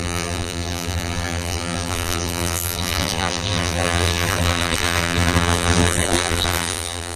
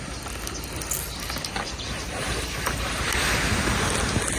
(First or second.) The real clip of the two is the second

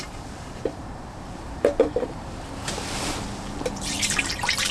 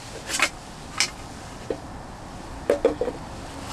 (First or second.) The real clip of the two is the second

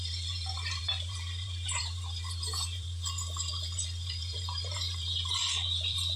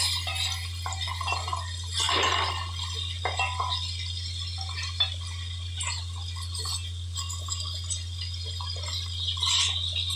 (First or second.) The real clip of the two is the second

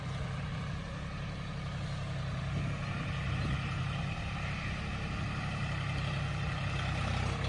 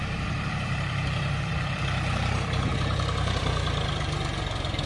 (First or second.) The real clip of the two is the first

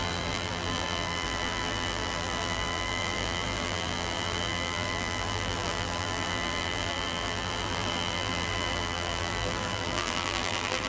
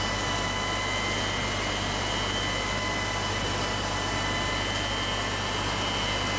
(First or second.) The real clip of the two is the second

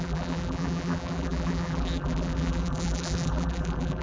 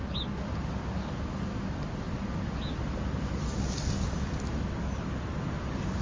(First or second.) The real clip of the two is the second